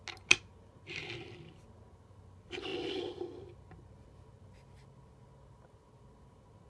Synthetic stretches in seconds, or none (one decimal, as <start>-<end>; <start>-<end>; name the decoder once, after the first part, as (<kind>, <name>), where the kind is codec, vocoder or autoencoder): none